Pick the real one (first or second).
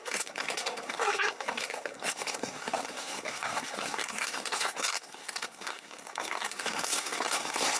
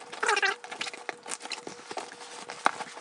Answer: second